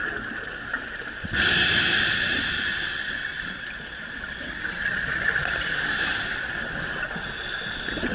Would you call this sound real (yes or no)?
yes